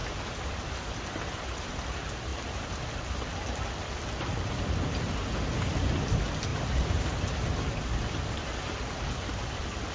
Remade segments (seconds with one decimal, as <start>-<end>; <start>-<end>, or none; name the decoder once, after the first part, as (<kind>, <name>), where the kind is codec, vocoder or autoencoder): 0.0-0.5 (vocoder, BigVGAN v2); 6.5-7.0